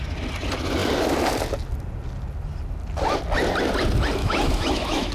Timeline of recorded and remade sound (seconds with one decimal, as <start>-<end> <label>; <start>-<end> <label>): 0.0-4.2 recorded; 4.2-5.1 remade

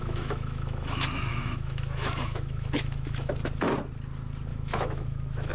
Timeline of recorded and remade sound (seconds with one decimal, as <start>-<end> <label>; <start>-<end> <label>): 0.0-3.3 remade; 3.3-4.5 recorded; 4.5-5.5 remade

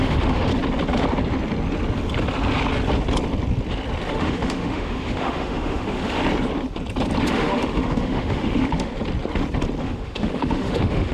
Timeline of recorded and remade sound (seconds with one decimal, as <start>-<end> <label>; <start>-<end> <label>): 0.0-0.5 remade; 0.5-4.1 recorded; 4.1-6.2 remade; 6.2-7.2 recorded; 7.2-8.9 remade; 8.9-9.8 recorded; 9.8-11.1 remade

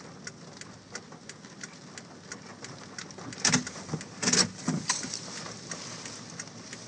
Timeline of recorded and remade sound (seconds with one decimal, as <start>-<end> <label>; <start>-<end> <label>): 0.0-6.9 recorded

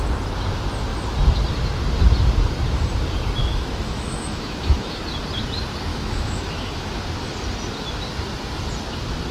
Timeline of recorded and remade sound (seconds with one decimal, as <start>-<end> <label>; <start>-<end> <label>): 0.0-3.4 recorded; 3.4-5.0 remade; 5.0-5.9 recorded; 5.9-7.0 remade; 7.0-9.3 recorded

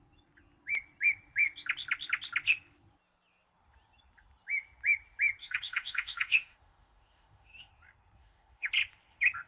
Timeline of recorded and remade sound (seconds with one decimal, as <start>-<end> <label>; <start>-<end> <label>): 0.0-5.4 recorded; 5.4-7.7 remade; 7.7-8.2 recorded; 8.2-8.7 remade; 8.7-9.5 recorded

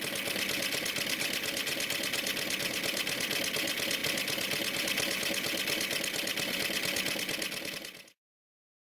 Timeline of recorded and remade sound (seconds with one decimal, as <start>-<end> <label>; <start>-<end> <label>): 0.0-8.9 recorded